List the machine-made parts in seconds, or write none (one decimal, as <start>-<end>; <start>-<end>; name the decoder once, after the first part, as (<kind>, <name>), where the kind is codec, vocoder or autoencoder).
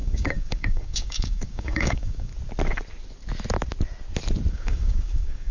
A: 0.0-2.3 (codec, DAC); 4.5-5.5